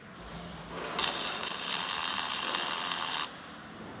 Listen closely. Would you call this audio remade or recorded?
recorded